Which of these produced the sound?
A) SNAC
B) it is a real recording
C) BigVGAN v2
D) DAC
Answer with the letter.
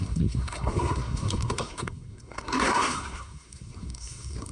A